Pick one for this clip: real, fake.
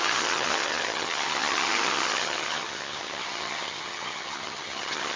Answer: fake